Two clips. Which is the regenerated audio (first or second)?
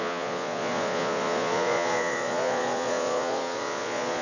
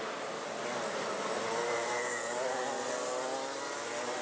first